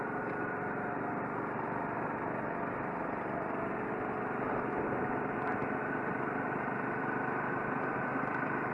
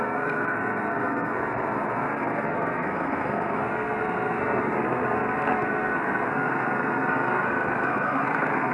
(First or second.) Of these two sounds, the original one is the first